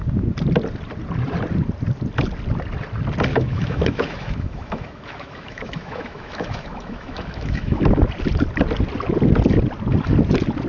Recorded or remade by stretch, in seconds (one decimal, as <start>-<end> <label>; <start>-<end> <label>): 0.0-3.3 recorded; 3.3-7.8 remade; 7.8-10.7 recorded